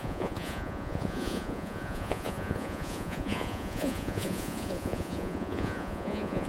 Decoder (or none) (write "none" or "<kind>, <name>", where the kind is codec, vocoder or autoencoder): vocoder, Vocos